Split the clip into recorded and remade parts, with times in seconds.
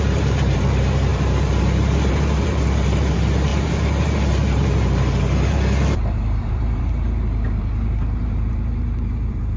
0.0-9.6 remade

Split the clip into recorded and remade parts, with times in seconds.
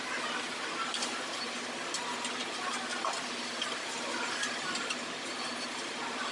0.0-2.4 remade; 2.4-3.7 recorded; 3.7-6.3 remade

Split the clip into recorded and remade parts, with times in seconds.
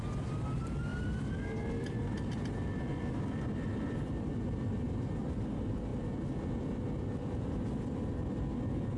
0.0-9.0 remade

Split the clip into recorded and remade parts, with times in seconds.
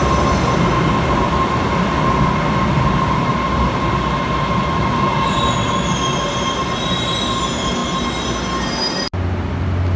0.0-10.0 recorded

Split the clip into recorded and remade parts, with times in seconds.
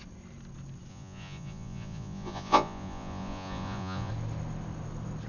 0.0-0.9 recorded; 0.9-4.1 remade; 4.1-5.3 recorded